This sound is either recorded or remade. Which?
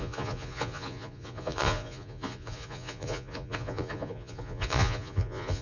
remade